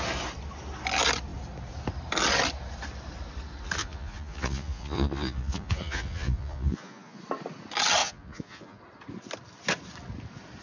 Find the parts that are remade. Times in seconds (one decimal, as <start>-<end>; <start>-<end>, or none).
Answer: 3.8-7.2; 8.0-8.8